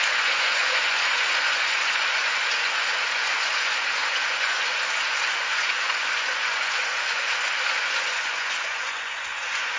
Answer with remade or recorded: remade